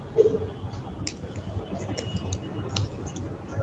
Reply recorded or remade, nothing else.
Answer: recorded